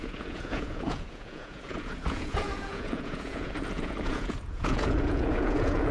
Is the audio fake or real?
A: fake